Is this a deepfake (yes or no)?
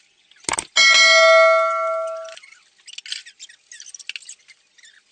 no